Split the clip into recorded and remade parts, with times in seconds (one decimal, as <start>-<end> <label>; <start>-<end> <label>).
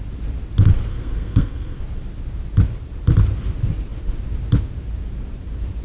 0.0-0.9 recorded; 0.9-1.8 remade; 1.8-5.8 recorded